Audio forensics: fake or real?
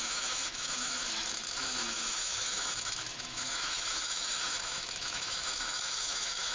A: fake